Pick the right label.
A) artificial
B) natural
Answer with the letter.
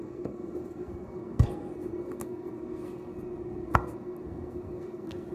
A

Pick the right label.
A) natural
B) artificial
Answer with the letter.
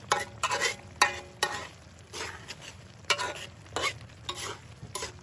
A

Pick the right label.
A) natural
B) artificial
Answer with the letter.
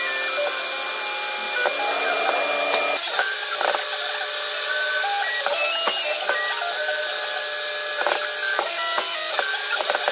A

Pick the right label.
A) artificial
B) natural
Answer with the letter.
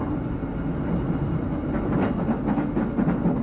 B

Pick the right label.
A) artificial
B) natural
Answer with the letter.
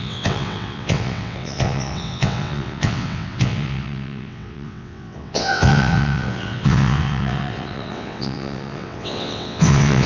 A